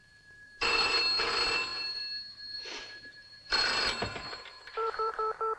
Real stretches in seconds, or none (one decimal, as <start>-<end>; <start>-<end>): 1.0-1.7; 5.1-5.6